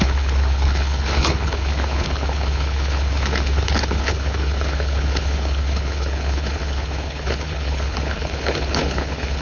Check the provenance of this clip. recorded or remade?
remade